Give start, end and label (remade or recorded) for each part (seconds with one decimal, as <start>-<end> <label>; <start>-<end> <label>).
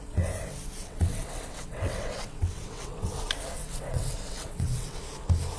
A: 0.0-0.8 recorded; 0.8-3.1 remade; 3.1-3.6 recorded; 3.6-5.0 remade; 5.0-5.6 recorded